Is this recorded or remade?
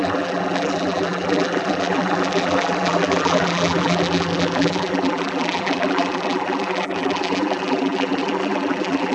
remade